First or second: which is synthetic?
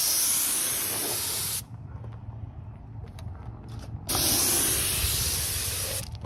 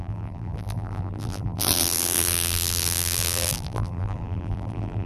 second